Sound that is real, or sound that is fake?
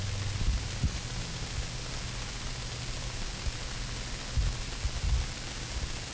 real